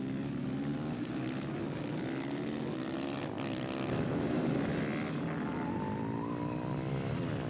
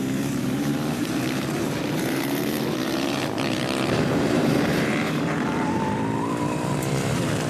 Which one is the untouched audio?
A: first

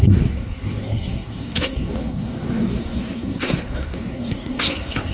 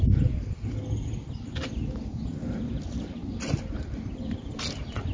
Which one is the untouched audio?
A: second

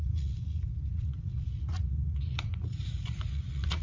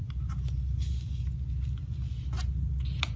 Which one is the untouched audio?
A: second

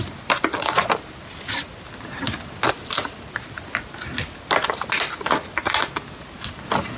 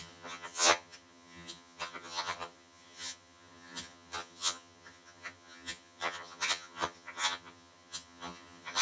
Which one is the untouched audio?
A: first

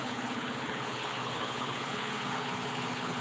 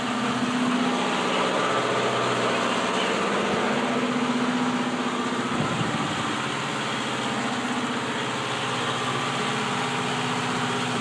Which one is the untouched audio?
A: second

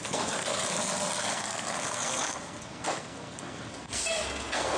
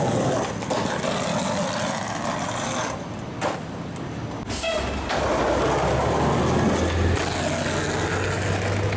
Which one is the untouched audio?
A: second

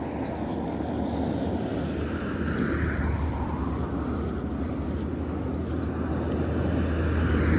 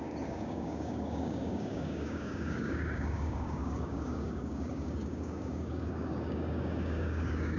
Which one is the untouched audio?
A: first